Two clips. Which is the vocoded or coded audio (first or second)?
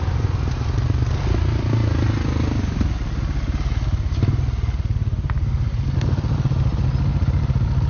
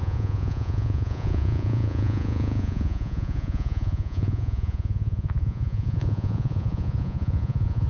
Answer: second